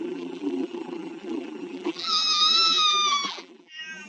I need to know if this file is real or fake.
fake